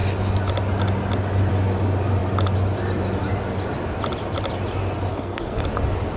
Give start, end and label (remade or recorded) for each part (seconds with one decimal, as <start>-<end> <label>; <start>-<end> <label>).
0.0-5.1 recorded; 5.1-5.6 remade; 5.6-6.2 recorded